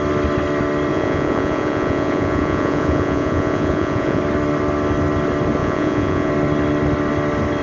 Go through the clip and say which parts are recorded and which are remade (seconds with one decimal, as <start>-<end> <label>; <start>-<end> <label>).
0.0-0.9 recorded; 0.9-4.2 remade; 4.2-5.6 recorded; 5.6-6.3 remade; 6.3-7.6 recorded